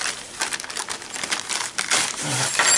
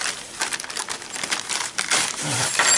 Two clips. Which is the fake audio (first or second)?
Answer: second